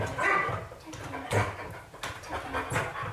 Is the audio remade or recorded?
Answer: recorded